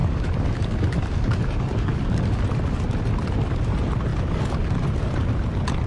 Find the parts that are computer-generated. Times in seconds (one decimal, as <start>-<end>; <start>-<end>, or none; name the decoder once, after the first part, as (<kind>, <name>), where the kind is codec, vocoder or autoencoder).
0.0-2.4 (codec, DAC)